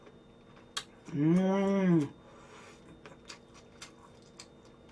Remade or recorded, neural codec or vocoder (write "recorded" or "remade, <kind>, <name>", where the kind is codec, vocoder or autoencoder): recorded